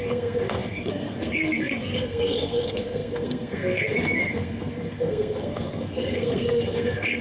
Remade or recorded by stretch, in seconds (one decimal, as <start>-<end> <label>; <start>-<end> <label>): 0.0-7.2 remade